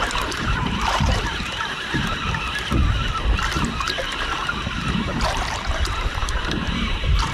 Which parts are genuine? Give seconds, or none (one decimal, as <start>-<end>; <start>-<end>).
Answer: 2.2-4.4; 5.1-5.7